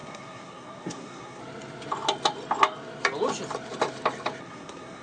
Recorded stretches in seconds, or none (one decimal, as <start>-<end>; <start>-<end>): 1.4-4.4